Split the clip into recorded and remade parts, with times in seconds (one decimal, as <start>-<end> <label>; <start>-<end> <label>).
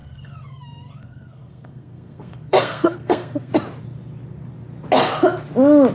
0.0-3.5 remade; 3.5-5.9 recorded